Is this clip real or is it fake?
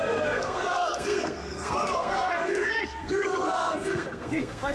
fake